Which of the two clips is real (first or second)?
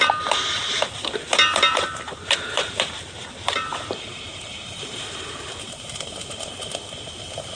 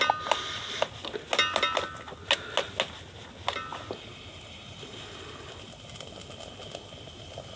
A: second